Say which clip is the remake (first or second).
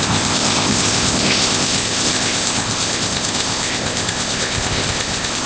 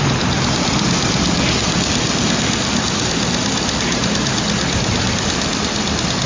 first